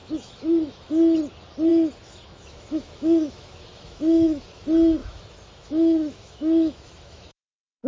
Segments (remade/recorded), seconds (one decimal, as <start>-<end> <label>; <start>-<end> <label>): 0.0-0.9 remade; 0.9-1.7 recorded; 1.7-4.4 remade; 4.4-5.0 recorded; 5.0-7.9 remade